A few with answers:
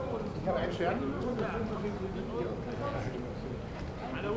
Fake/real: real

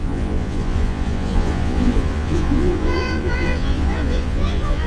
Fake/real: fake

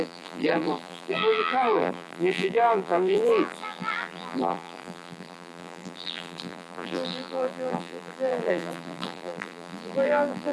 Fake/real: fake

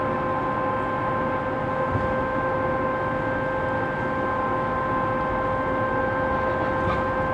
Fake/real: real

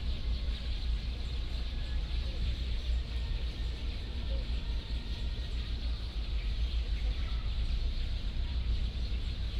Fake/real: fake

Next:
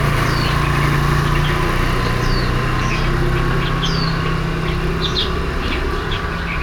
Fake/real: real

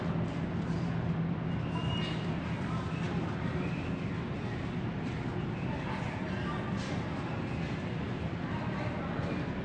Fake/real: real